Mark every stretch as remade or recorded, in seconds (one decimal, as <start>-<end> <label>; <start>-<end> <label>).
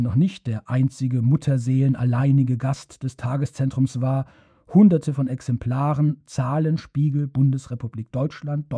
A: 0.0-8.1 remade; 8.1-8.8 recorded